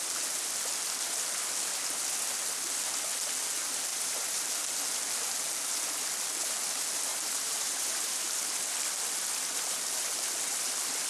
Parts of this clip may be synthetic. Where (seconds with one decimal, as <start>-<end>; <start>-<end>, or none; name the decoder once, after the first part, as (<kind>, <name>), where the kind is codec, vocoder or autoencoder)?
3.9-4.5 (vocoder, BigVGAN v2); 7.1-8.6